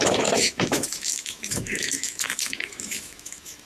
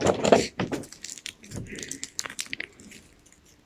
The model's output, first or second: first